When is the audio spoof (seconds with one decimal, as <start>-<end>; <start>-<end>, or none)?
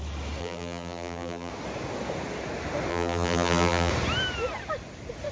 0.4-1.5; 2.9-3.9